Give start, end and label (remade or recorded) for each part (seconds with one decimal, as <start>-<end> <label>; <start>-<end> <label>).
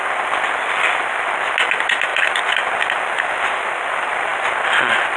0.0-5.2 recorded